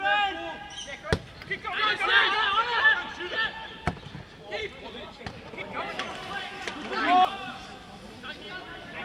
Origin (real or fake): real